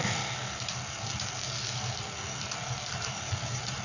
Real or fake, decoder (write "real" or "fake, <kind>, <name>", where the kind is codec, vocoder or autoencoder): real